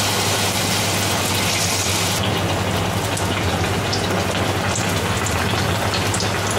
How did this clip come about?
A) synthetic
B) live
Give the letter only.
B